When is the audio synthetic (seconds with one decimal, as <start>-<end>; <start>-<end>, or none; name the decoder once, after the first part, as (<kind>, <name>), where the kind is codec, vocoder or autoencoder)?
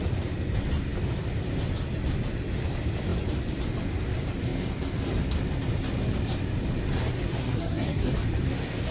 7.4-8.1 (codec, SNAC)